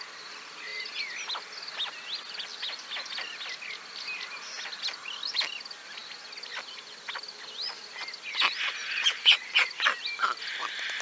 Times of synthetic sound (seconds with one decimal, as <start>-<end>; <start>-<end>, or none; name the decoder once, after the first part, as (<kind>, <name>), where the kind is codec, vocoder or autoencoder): 8.8-9.7 (vocoder, Vocos)